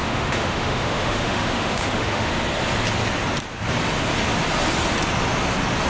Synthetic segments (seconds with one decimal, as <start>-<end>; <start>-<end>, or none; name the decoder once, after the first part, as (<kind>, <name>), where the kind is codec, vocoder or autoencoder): 0.0-2.3 (autoencoder, DAC-VAE)